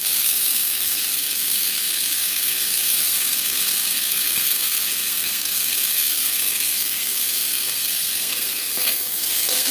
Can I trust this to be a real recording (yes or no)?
no